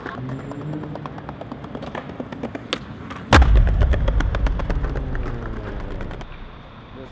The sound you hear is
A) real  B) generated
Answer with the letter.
A